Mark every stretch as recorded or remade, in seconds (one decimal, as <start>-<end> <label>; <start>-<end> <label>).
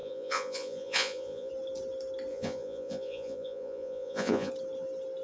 0.0-1.5 remade; 1.5-2.3 recorded; 2.3-4.5 remade; 4.5-5.2 recorded